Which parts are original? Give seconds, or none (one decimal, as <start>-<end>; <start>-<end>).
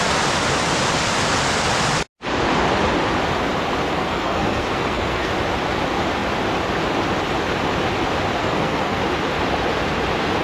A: 0.0-3.9; 5.3-8.4; 9.0-10.4